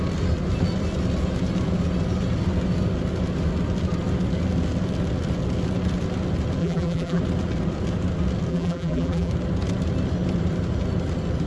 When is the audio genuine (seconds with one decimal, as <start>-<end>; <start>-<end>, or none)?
0.0-6.6; 7.2-8.5; 9.3-11.5